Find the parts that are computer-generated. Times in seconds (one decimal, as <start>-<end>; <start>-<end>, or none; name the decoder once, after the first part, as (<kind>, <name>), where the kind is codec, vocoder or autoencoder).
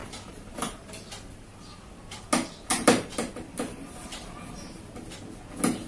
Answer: 0.0-0.9 (vocoder, BigVGAN v2); 2.7-4.8